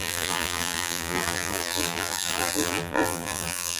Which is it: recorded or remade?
remade